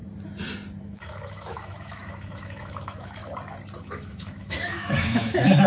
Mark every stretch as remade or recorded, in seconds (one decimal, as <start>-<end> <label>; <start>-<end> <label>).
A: 0.0-0.8 recorded; 0.8-3.2 remade; 3.2-3.8 recorded; 3.8-5.7 remade